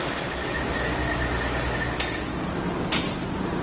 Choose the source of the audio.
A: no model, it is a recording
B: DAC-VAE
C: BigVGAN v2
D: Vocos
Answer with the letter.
A